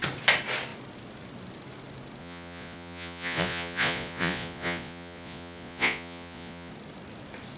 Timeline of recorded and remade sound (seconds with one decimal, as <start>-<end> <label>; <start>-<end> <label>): 0.0-2.2 recorded; 2.2-6.7 remade; 6.7-7.6 recorded